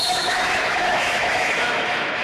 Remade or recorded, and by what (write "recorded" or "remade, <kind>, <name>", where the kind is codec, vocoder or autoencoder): remade, autoencoder, DAC-VAE